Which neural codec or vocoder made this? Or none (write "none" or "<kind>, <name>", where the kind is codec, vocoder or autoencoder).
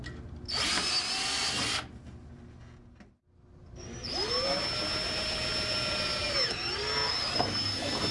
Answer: none